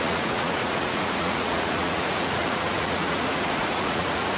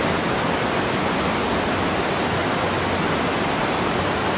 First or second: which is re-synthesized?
first